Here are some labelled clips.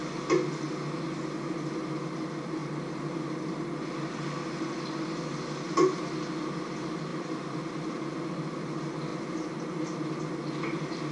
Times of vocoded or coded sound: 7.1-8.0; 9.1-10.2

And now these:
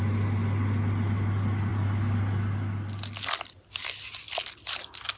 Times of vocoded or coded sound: none